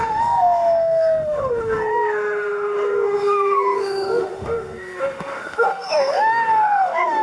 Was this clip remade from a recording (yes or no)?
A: yes